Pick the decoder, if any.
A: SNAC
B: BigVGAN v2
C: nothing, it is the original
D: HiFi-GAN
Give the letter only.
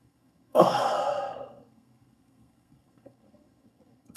A